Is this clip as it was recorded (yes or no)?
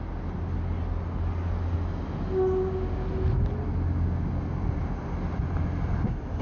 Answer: yes